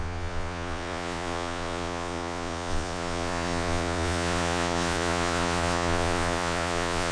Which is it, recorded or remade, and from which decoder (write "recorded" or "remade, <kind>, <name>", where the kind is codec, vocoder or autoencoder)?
remade, vocoder, Vocos